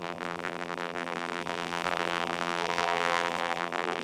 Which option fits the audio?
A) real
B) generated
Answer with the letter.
B